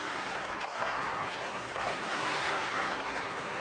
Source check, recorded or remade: remade